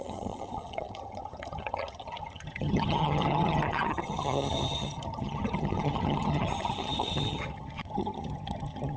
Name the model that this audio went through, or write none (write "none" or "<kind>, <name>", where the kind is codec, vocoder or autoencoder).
vocoder, HiFi-GAN